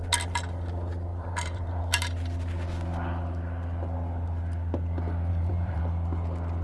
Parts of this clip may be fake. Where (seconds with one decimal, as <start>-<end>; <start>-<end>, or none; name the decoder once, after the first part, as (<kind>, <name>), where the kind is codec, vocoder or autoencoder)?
1.1-1.8 (vocoder, BigVGAN v2); 5.3-5.8